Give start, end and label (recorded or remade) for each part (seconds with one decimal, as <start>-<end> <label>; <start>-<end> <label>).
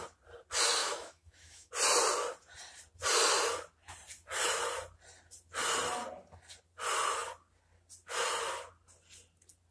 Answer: 0.0-0.8 recorded; 0.8-1.7 remade; 1.7-9.7 recorded